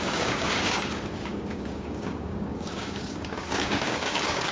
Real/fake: fake